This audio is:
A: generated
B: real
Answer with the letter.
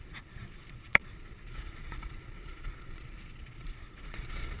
A